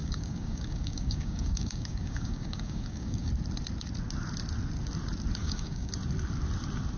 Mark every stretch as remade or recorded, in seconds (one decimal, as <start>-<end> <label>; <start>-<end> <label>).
0.0-3.3 remade; 3.3-5.4 recorded; 5.4-5.9 remade; 5.9-7.0 recorded